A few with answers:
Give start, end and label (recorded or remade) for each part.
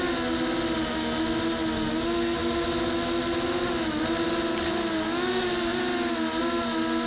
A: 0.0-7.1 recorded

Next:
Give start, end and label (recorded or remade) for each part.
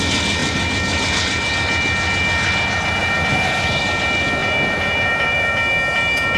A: 0.0-0.4 recorded; 0.4-1.5 remade; 1.5-3.0 recorded; 3.0-3.8 remade; 3.8-4.4 recorded; 4.4-5.5 remade; 5.5-6.4 recorded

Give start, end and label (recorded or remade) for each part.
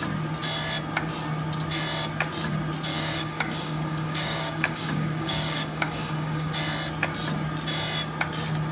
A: 0.0-2.9 recorded; 2.9-6.5 remade; 6.5-8.7 recorded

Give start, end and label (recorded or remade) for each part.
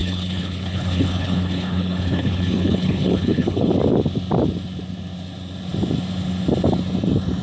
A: 0.0-3.7 remade; 3.7-7.4 recorded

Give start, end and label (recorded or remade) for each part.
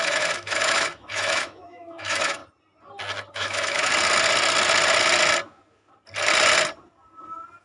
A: 0.0-2.4 remade; 2.4-3.3 recorded; 3.3-3.9 remade; 3.9-7.6 recorded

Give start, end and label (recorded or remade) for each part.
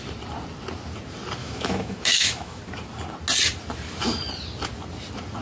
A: 0.0-1.4 recorded; 1.4-2.6 remade; 2.6-5.4 recorded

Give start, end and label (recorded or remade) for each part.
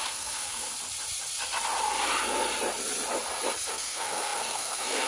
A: 0.0-0.7 remade; 0.7-3.7 recorded; 3.7-5.1 remade